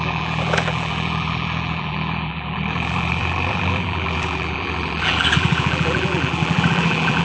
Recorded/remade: remade